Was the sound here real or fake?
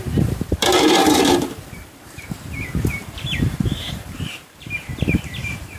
fake